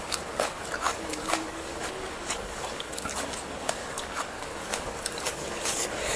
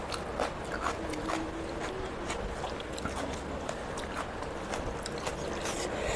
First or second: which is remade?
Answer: first